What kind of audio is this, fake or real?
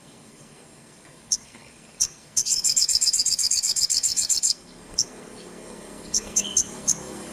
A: fake